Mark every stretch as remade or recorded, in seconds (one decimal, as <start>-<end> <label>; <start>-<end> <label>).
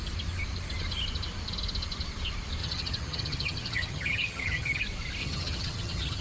0.0-2.6 recorded; 2.6-4.8 remade; 4.8-5.2 recorded; 5.2-6.2 remade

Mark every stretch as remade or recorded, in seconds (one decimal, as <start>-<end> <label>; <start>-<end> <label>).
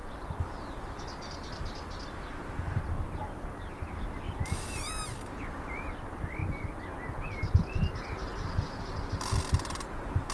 0.0-3.2 remade; 3.2-8.3 recorded; 8.3-9.0 remade; 9.0-10.3 recorded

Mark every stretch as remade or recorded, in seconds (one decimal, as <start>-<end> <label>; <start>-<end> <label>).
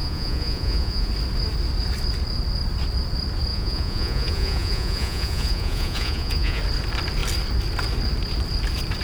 0.0-1.1 remade; 1.1-3.5 recorded; 3.5-6.6 remade; 6.6-9.0 recorded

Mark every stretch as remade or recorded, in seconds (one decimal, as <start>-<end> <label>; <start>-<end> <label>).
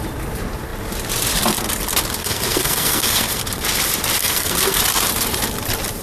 0.0-2.2 recorded; 2.2-3.4 remade; 3.4-4.2 recorded; 4.2-4.8 remade; 4.8-6.0 recorded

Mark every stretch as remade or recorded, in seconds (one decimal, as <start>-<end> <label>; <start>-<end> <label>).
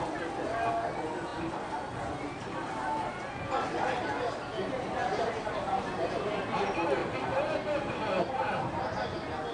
0.0-1.3 recorded; 1.3-1.9 remade; 1.9-7.0 recorded; 7.0-8.7 remade; 8.7-9.5 recorded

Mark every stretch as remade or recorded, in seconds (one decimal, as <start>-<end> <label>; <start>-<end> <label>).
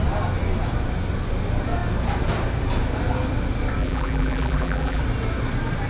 0.0-3.8 recorded; 3.8-5.0 remade; 5.0-5.9 recorded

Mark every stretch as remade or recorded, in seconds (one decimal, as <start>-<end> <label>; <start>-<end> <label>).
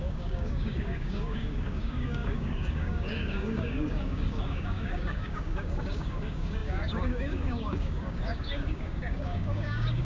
0.0-10.0 remade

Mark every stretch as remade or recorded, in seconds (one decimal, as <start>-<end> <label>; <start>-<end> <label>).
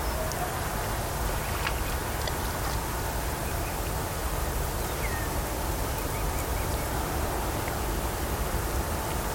0.0-6.5 recorded; 6.5-7.2 remade; 7.2-9.3 recorded